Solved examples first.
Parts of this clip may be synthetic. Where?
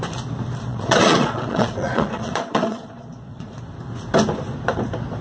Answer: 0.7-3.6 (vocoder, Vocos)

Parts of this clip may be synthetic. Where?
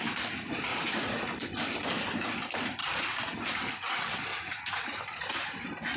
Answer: 0.7-1.3 (vocoder, Vocos); 4.3-4.8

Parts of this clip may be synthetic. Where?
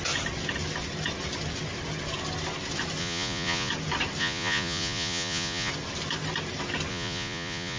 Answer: 3.0-3.7 (vocoder, Vocos); 4.2-5.7; 6.9-7.8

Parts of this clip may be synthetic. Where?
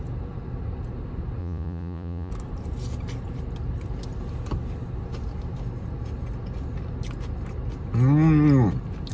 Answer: 1.4-2.3 (vocoder, Vocos)